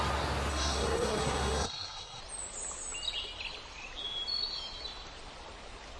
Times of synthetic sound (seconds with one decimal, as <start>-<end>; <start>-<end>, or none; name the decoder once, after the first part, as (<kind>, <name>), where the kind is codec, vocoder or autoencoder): 0.5-2.2 (codec, SNAC)